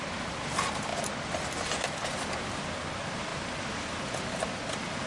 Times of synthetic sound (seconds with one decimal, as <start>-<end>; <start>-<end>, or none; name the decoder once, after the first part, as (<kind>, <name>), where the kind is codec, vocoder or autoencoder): none